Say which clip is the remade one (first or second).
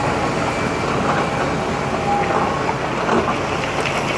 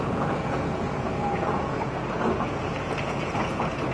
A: second